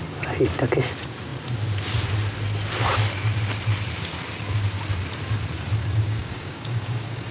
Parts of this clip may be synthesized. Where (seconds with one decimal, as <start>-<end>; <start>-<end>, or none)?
5.8-7.3